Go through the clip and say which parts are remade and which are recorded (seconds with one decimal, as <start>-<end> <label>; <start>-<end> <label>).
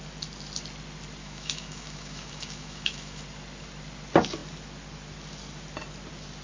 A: 0.0-1.2 recorded; 1.2-3.2 remade; 3.2-6.4 recorded